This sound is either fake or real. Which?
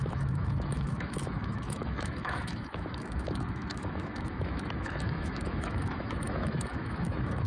fake